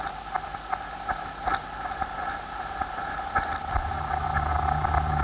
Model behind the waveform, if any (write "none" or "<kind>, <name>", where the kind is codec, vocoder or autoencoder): none